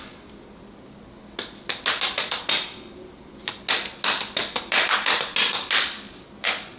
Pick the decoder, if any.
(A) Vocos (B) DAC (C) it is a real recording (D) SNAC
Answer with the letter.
C